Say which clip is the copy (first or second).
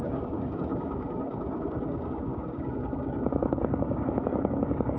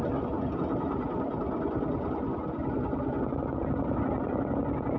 first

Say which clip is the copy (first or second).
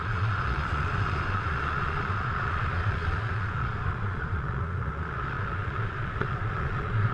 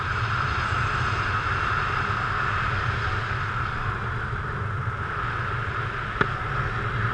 first